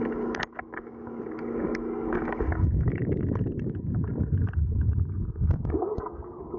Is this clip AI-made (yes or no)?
yes